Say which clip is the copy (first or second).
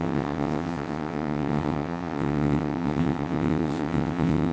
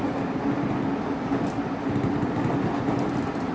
first